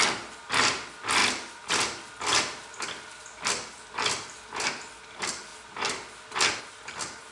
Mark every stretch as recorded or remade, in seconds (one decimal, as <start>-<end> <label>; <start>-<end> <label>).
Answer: 0.0-7.3 recorded